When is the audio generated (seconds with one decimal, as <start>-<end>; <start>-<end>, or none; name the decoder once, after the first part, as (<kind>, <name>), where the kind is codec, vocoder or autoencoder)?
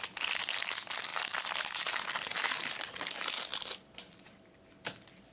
1.1-2.5 (vocoder, BigVGAN v2); 3.5-4.6